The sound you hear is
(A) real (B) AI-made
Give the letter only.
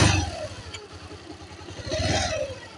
A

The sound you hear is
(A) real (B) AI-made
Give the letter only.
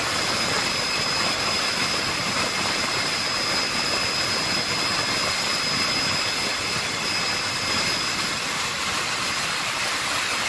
A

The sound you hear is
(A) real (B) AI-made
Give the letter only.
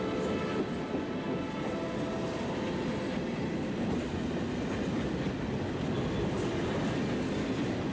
A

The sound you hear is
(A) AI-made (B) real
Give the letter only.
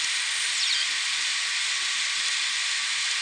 B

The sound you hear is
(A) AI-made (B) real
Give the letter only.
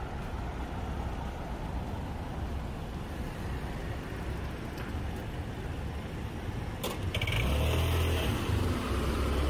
B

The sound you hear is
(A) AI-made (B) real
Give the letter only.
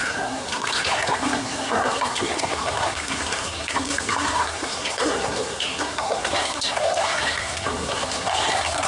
A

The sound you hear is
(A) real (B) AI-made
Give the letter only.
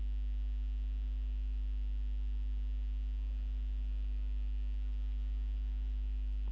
A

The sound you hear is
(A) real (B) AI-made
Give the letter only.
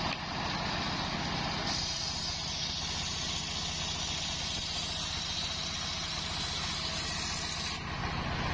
A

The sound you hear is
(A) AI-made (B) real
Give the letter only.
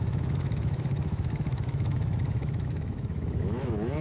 A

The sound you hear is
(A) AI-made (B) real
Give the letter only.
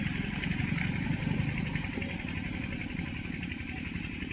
B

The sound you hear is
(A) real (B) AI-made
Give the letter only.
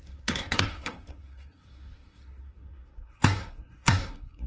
B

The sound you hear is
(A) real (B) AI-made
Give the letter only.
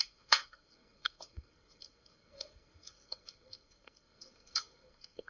B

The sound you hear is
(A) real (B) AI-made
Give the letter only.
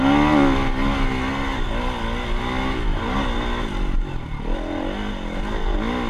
A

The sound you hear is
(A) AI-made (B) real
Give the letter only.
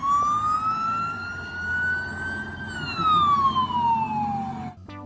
B